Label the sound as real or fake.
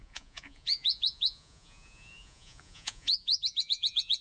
fake